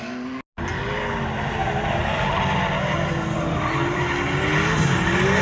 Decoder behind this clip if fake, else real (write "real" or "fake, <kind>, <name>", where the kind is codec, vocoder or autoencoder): real